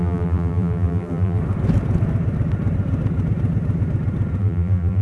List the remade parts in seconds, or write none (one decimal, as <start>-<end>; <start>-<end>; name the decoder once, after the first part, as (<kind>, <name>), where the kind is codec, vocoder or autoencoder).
0.0-1.4 (vocoder, BigVGAN v2); 4.4-5.0